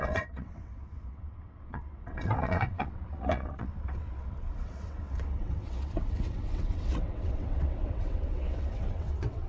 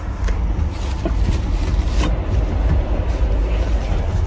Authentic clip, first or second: second